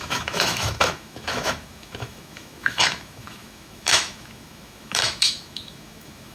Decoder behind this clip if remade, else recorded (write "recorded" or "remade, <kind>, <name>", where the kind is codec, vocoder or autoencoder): remade, autoencoder, DAC-VAE